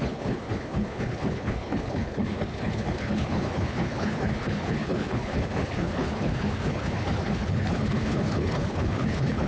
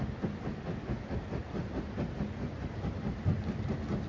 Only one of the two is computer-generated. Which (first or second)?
first